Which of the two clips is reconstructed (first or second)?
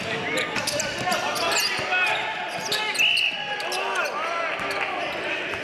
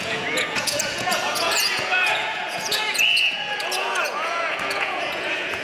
second